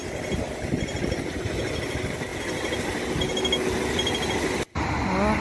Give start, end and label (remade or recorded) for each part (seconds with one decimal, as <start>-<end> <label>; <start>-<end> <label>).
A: 0.0-5.4 recorded